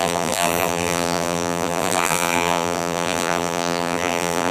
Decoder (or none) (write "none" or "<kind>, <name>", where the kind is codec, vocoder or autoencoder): vocoder, BigVGAN v2